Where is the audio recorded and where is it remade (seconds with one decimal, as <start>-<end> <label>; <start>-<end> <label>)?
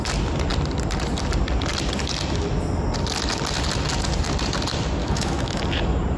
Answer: 0.0-5.0 recorded; 5.0-5.6 remade; 5.6-6.2 recorded